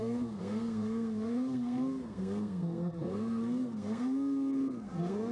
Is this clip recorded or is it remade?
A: remade